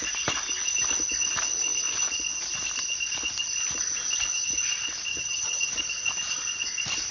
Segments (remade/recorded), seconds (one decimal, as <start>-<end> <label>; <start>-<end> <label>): 0.0-5.1 recorded; 5.1-5.7 remade; 5.7-7.1 recorded